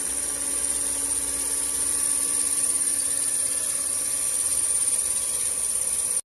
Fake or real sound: real